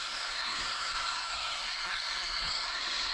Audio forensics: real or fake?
fake